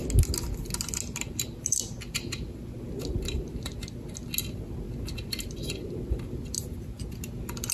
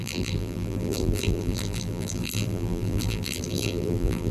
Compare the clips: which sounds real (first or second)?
first